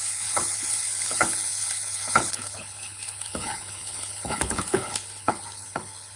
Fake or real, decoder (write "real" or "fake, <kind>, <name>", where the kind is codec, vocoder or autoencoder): fake, codec, HILCodec